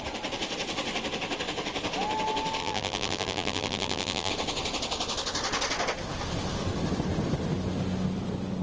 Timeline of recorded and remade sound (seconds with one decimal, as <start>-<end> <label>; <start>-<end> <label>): 0.0-2.6 recorded; 2.6-4.3 remade; 4.3-8.6 recorded